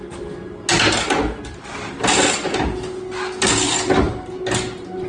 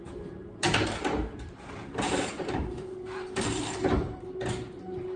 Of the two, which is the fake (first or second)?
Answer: second